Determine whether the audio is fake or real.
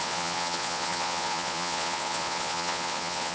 fake